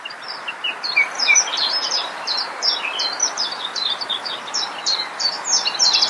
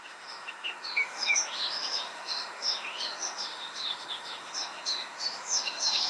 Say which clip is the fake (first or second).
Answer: second